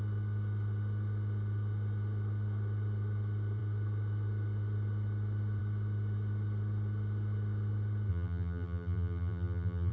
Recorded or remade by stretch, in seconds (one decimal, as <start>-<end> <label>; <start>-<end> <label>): 0.0-8.1 recorded; 8.1-9.9 remade